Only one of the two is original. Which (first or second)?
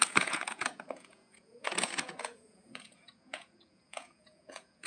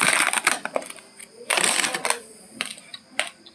second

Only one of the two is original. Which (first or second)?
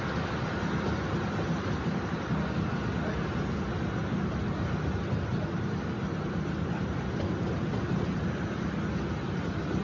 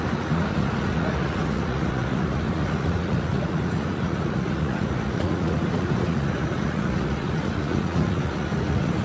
first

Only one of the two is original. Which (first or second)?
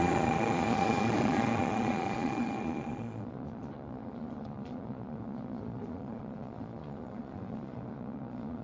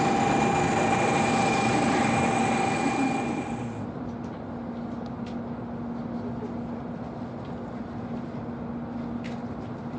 second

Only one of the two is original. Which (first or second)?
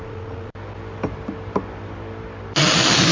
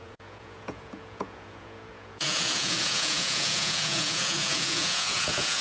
first